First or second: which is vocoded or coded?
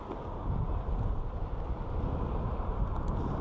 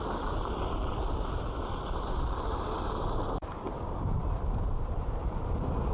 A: second